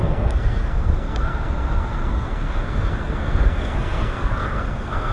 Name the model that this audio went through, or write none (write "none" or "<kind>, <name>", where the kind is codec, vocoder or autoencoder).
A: codec, SNAC